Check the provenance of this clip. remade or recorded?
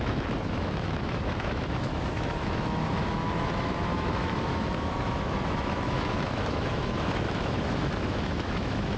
remade